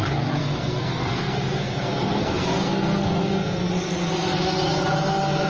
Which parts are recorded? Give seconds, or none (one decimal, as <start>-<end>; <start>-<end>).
0.0-0.4; 3.7-5.5